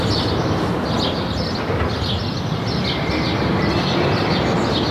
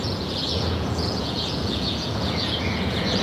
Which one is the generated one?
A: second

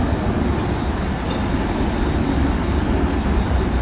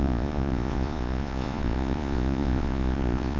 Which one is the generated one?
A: second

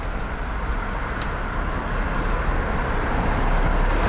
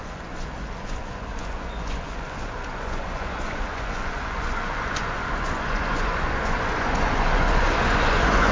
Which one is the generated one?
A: second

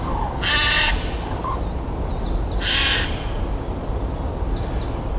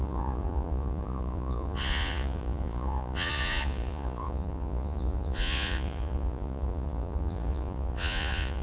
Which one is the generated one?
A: second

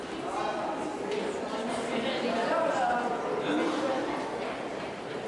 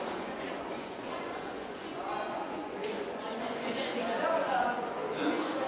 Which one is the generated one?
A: second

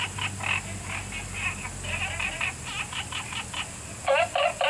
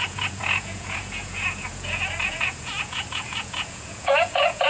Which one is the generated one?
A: second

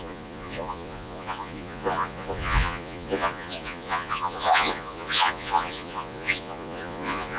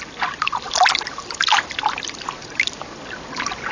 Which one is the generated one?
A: first